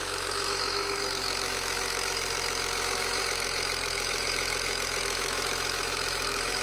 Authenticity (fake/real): fake